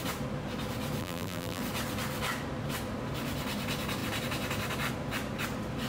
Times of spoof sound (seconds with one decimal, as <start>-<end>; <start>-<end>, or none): 1.0-1.6